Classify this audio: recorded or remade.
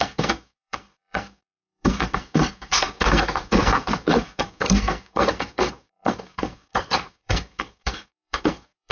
remade